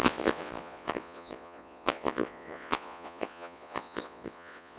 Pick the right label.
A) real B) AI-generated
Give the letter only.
B